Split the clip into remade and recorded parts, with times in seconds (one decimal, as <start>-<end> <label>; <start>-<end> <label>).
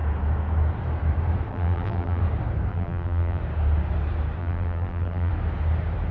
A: 0.0-1.5 recorded; 1.5-2.2 remade; 2.2-2.7 recorded; 2.7-3.4 remade; 3.4-4.4 recorded; 4.4-5.3 remade; 5.3-6.1 recorded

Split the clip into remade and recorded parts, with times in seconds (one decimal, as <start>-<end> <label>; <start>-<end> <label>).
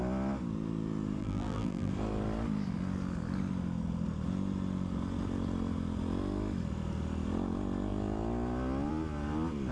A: 0.0-1.2 recorded; 1.2-1.9 remade; 1.9-9.7 recorded